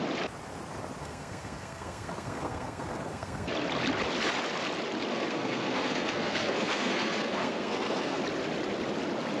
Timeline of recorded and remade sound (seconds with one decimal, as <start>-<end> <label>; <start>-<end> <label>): 0.0-1.0 recorded; 1.0-3.5 remade; 3.5-5.1 recorded; 5.1-8.2 remade; 8.2-9.4 recorded

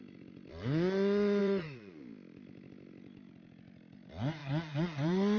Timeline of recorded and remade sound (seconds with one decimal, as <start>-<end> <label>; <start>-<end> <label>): 0.0-1.4 recorded; 1.4-2.0 remade; 2.0-4.4 recorded; 4.4-5.4 remade

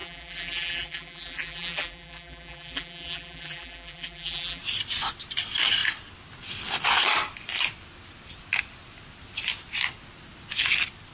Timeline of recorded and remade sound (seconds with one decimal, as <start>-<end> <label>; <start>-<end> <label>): 0.0-4.6 remade; 4.6-11.1 recorded

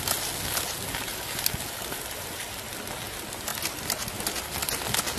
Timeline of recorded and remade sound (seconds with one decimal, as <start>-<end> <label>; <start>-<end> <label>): 0.0-1.1 recorded; 1.1-2.8 remade; 2.8-5.2 recorded

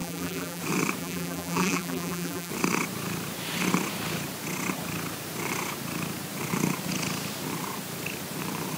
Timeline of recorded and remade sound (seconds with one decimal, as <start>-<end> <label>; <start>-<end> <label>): 0.0-0.6 remade; 0.6-1.0 recorded; 1.0-2.5 remade; 2.5-8.8 recorded

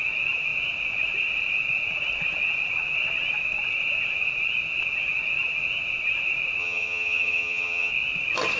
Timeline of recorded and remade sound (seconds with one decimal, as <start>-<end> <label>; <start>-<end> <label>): 0.0-6.6 recorded; 6.6-7.9 remade; 7.9-8.6 recorded

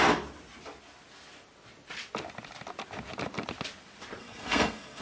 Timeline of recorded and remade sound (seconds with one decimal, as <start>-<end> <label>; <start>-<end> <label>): 0.0-4.2 recorded; 4.2-5.0 remade